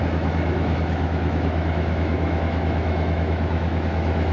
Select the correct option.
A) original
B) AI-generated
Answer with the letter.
B